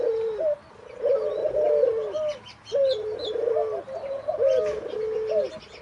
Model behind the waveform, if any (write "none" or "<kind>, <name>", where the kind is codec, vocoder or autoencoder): none